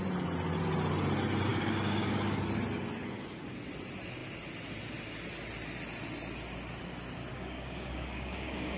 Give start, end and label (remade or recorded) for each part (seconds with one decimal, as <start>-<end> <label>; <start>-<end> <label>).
0.0-1.5 recorded; 1.5-2.4 remade; 2.4-7.3 recorded; 7.3-8.8 remade

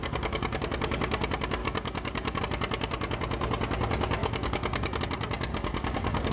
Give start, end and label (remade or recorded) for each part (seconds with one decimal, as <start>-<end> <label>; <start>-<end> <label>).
0.0-0.6 remade; 0.6-1.6 recorded; 1.6-2.4 remade; 2.4-4.2 recorded; 4.2-5.0 remade; 5.0-5.5 recorded; 5.5-6.3 remade

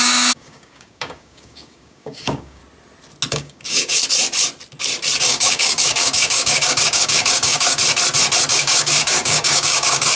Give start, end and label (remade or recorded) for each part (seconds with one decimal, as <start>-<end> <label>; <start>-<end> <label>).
0.0-2.6 remade; 2.6-3.3 recorded; 3.3-4.0 remade; 4.0-5.2 recorded; 5.2-7.8 remade; 7.8-8.5 recorded; 8.5-10.2 remade

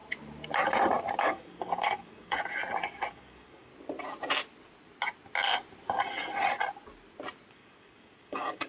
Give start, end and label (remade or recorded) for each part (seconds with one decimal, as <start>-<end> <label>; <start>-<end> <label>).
0.0-1.2 recorded; 1.2-2.6 remade; 2.6-3.1 recorded; 3.1-3.7 remade; 3.7-7.5 recorded; 7.5-8.7 remade